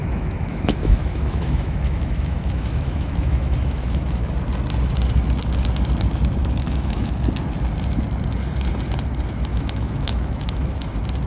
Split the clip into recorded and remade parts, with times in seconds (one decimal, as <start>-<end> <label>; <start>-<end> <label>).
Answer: 0.0-4.3 remade; 4.3-6.4 recorded; 6.4-7.1 remade; 7.1-9.5 recorded; 9.5-10.7 remade; 10.7-11.3 recorded